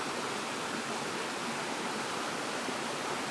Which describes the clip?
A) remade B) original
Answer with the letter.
B